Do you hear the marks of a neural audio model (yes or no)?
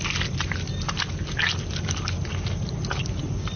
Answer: no